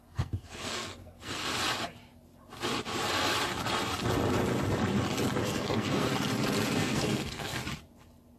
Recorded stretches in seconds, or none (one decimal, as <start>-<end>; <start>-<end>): 1.5-5.4; 6.1-6.7; 7.6-8.4